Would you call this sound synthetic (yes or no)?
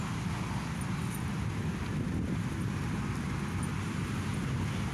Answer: no